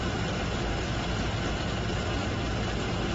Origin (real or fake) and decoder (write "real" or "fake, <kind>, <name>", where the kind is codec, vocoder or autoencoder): real